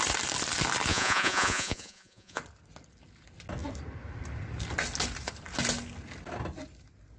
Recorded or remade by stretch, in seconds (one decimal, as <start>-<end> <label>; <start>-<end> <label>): 0.0-0.9 recorded; 0.9-2.4 remade; 2.4-7.2 recorded